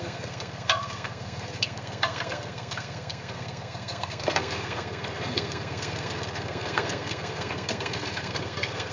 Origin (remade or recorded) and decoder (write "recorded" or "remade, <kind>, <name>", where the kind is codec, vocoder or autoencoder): remade, codec, SNAC